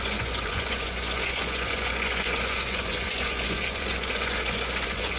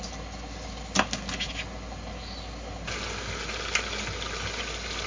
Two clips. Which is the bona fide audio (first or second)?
second